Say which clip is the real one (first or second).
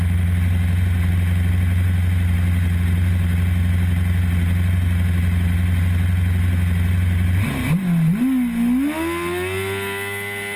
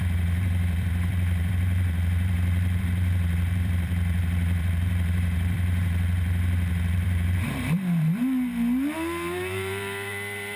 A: first